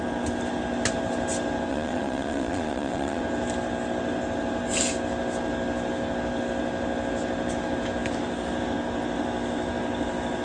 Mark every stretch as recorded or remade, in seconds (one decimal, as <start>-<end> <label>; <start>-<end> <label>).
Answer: 0.0-1.7 recorded; 1.7-3.2 remade; 3.2-10.4 recorded